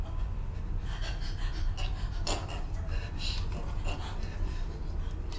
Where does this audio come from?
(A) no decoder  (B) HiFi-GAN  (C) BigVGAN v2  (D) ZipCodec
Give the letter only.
A